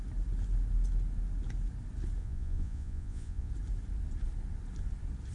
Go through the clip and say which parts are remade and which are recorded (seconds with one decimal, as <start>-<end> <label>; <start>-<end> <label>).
0.0-2.2 recorded; 2.2-3.5 remade; 3.5-5.3 recorded